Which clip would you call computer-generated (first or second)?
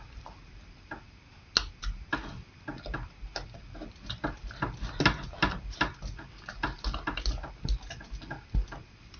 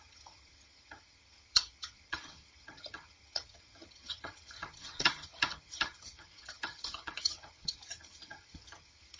second